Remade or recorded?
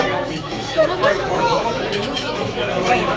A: remade